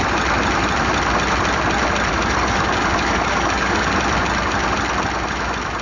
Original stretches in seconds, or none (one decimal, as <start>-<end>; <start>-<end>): 0.0-2.1; 4.0-5.8